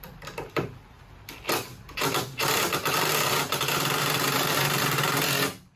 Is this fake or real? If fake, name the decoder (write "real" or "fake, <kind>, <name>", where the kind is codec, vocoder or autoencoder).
real